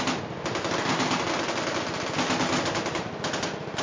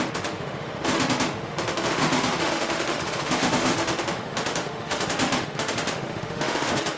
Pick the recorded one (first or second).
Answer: first